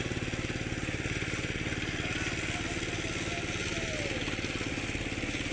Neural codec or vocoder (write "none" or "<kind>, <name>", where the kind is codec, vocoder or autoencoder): none